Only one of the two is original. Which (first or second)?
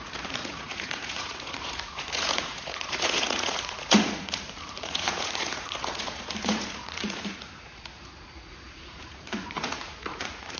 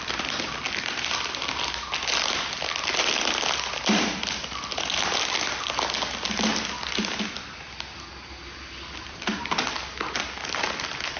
second